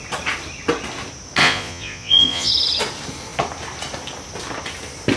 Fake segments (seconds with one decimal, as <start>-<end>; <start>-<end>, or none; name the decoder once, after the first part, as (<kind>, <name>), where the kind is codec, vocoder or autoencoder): 1.4-2.5 (vocoder, Vocos)